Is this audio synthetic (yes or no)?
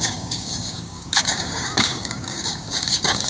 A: yes